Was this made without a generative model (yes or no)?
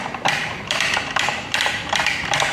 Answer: no